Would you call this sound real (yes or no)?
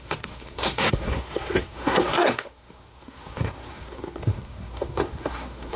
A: no